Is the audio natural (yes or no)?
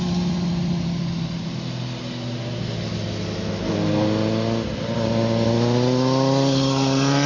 yes